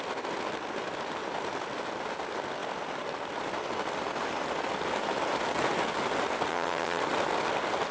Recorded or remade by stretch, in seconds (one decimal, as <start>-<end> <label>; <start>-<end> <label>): 0.0-6.5 recorded; 6.5-7.0 remade; 7.0-7.9 recorded

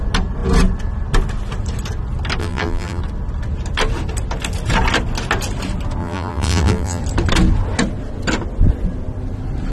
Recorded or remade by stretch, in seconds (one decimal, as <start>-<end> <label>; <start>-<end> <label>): 0.0-2.4 recorded; 2.4-3.0 remade; 3.0-6.0 recorded; 6.0-7.0 remade; 7.0-9.7 recorded

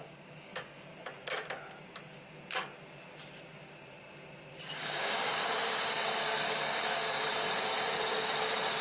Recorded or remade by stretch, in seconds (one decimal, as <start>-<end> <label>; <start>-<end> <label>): 0.0-0.9 remade; 0.9-4.6 recorded; 4.6-7.3 remade; 7.3-8.8 recorded

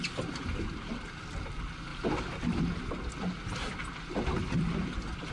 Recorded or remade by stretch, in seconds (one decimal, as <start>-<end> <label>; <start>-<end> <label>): 0.0-5.3 recorded

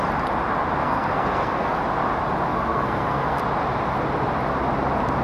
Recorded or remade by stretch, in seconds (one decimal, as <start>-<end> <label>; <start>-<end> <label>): 0.0-0.8 recorded; 0.8-1.8 remade; 1.8-2.5 recorded; 2.5-3.4 remade; 3.4-5.2 recorded

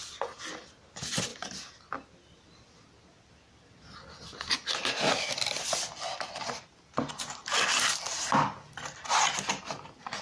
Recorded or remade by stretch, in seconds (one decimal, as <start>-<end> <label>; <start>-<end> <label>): 0.0-10.2 recorded

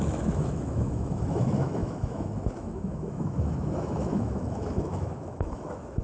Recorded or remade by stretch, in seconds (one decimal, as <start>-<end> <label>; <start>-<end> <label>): 0.0-6.0 remade